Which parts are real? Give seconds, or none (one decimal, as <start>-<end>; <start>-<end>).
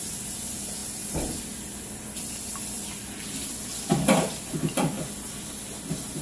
0.0-6.2